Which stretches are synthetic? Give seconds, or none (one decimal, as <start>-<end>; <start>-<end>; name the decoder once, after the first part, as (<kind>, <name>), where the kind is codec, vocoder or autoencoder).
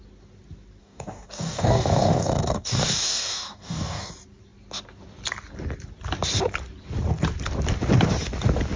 0.8-4.1 (codec, DAC)